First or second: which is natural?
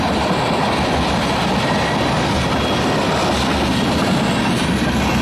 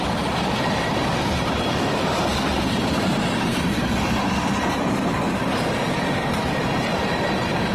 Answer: first